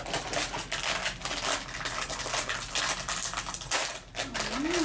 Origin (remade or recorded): recorded